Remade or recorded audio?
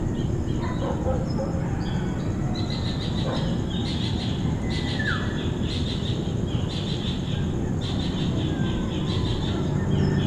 recorded